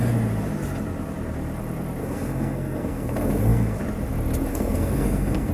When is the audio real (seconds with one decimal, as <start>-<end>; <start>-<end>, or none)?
0.0-2.0; 3.8-4.5